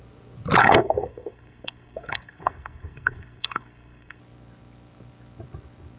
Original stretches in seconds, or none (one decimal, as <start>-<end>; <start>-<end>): 0.0-0.6; 4.2-6.0